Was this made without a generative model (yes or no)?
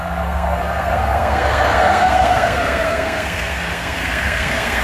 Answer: no